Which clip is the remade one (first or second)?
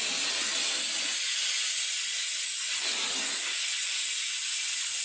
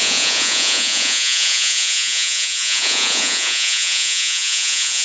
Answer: second